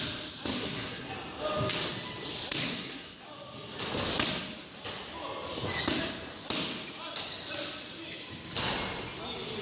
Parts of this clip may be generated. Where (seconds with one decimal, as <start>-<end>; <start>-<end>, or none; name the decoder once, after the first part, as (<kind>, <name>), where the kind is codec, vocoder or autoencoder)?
0.5-1.1 (codec, SNAC); 2.6-3.2